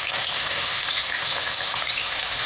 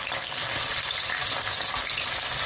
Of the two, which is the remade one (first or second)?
first